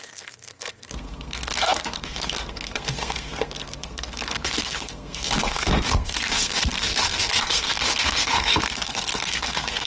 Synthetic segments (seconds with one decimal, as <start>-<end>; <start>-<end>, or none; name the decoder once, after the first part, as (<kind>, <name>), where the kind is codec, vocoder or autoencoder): 0.0-9.9 (codec, SNAC)